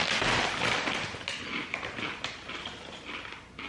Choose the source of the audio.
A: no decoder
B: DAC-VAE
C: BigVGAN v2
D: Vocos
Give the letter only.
A